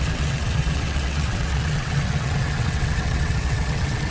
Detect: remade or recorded remade